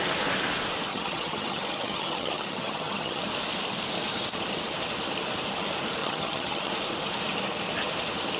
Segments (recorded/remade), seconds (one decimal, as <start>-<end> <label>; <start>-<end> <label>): 0.0-0.9 recorded; 0.9-3.2 remade; 3.2-6.0 recorded; 6.0-6.7 remade; 6.7-8.4 recorded